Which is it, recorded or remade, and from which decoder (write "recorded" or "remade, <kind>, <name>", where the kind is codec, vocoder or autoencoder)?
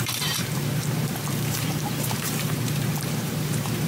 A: remade, vocoder, BigVGAN v2